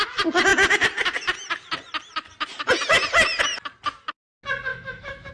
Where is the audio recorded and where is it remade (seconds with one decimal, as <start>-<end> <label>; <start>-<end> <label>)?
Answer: 0.0-4.7 recorded; 4.7-5.3 remade